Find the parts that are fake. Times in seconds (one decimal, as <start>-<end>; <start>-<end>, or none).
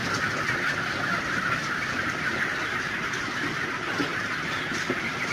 none